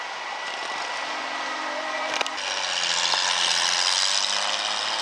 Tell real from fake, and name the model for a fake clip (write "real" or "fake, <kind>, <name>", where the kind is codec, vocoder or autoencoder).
real